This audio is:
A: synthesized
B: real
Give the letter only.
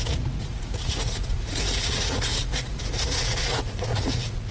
A